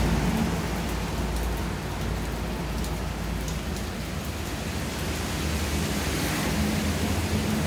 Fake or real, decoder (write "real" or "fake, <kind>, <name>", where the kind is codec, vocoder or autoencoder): real